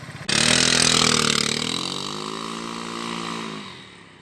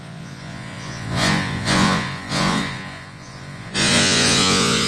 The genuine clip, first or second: first